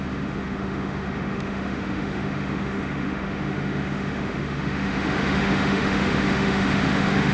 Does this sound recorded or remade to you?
remade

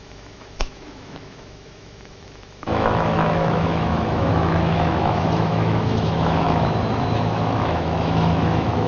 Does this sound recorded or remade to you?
remade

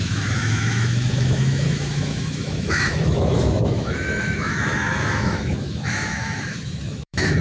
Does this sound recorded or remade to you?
remade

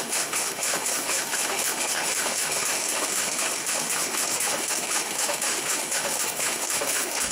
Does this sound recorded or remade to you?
remade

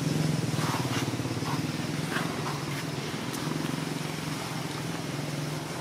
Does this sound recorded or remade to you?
recorded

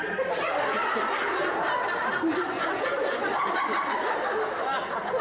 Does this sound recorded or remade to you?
recorded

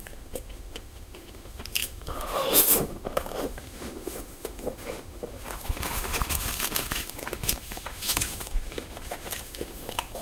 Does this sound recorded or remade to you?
remade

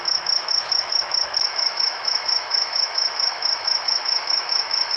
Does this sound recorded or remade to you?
remade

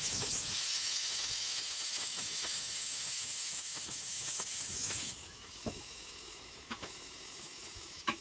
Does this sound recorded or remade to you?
remade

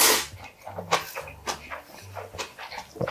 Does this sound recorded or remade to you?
recorded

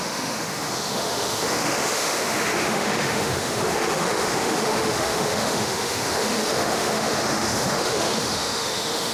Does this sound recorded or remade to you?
remade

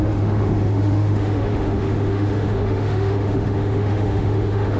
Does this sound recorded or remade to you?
remade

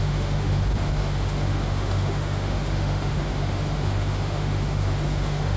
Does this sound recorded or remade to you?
remade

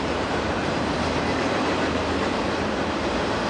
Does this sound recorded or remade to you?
recorded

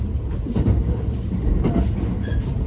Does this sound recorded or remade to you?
recorded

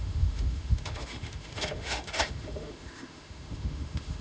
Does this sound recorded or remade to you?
remade